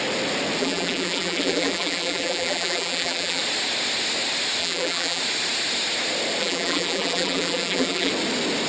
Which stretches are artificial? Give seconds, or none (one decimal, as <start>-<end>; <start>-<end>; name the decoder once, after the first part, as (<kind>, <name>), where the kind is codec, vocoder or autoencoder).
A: 0.6-3.4 (vocoder, BigVGAN v2); 4.6-5.2; 6.4-8.1